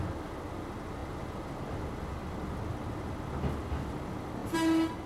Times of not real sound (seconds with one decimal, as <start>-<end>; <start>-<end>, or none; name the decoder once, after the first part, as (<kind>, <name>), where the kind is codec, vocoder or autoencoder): none